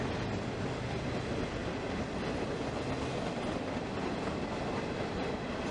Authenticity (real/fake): real